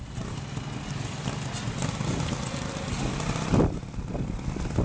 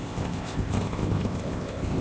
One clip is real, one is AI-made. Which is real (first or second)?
first